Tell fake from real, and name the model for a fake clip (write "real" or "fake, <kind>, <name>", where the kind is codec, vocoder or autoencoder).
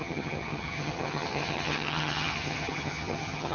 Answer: fake, vocoder, HiFi-GAN